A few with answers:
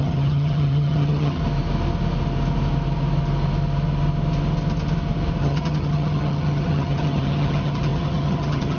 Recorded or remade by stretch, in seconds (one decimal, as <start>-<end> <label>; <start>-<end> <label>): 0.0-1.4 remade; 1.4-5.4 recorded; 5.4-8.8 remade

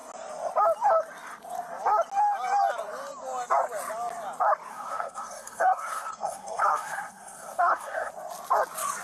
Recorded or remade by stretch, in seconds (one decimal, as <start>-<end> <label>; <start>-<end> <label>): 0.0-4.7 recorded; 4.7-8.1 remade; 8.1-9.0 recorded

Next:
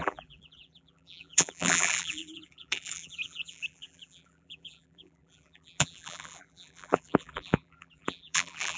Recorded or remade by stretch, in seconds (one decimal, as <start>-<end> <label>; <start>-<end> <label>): 0.0-8.8 remade